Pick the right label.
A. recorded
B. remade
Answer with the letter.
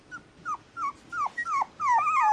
A